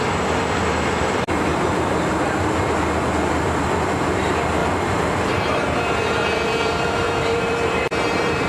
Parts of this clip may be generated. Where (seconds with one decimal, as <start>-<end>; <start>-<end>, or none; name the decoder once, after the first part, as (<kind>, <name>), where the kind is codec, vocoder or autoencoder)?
1.5-2.5 (vocoder, BigVGAN v2); 4.6-8.5

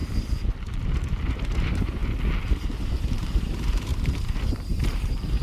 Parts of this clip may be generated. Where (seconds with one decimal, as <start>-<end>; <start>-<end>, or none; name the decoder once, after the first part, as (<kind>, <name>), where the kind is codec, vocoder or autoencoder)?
1.0-2.0 (vocoder, BigVGAN v2); 2.5-5.4

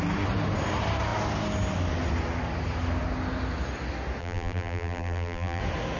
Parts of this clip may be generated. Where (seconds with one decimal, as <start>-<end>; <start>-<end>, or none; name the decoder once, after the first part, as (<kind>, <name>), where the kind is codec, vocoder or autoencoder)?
4.2-5.6 (vocoder, BigVGAN v2)

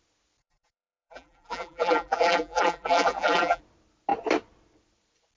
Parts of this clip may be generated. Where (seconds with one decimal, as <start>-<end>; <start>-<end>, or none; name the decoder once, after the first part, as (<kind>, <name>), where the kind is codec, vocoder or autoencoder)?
0.4-3.6 (vocoder, BigVGAN v2)

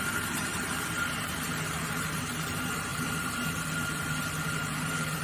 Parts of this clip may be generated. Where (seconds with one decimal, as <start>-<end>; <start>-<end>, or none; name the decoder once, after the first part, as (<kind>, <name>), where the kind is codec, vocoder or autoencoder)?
0.0-5.2 (vocoder, BigVGAN v2)

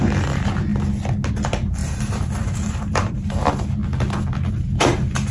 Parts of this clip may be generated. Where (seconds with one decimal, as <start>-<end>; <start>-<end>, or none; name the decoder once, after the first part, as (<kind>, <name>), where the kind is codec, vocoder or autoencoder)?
0.0-0.7 (vocoder, BigVGAN v2); 1.3-3.8; 4.5-5.3